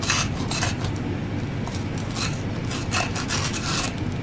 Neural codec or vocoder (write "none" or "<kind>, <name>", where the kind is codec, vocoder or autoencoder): none